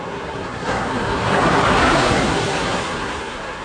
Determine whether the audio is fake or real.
fake